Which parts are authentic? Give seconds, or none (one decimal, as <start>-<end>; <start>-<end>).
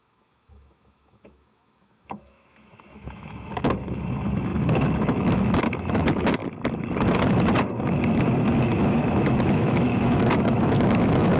6.4-8.4